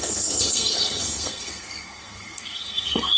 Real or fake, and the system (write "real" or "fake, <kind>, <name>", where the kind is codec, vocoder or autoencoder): fake, codec, SNAC